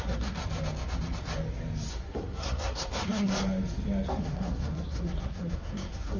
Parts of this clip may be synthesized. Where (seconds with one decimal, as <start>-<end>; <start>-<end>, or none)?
0.0-0.4; 1.9-3.3; 4.2-6.2